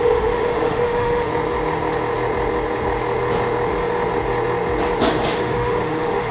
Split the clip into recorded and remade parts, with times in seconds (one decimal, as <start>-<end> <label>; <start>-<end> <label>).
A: 0.0-1.3 remade; 1.3-5.1 recorded; 5.1-6.3 remade